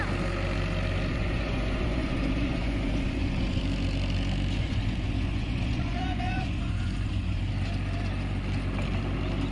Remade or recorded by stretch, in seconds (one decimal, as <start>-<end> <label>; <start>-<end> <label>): 0.0-1.1 recorded; 1.1-3.6 remade; 3.6-4.6 recorded; 4.6-7.4 remade; 7.4-9.5 recorded